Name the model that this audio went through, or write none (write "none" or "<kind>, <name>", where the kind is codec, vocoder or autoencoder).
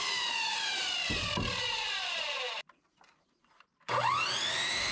vocoder, BigVGAN v2